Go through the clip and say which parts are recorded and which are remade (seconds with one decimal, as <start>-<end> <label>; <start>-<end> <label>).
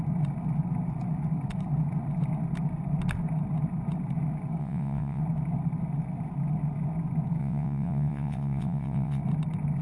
0.0-4.6 recorded; 4.6-5.2 remade; 5.2-7.4 recorded; 7.4-9.2 remade; 9.2-9.8 recorded